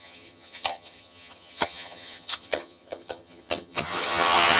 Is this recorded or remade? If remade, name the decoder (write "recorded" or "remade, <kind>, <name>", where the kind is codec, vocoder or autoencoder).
remade, vocoder, HiFi-GAN